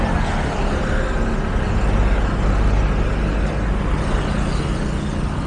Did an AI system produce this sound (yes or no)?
no